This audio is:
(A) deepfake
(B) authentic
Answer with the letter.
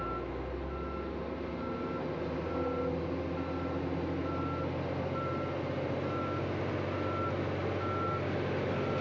B